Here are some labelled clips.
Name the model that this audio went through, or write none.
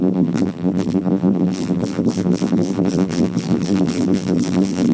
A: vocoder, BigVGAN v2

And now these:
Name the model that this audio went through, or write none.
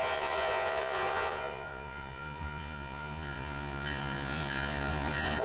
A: vocoder, Vocos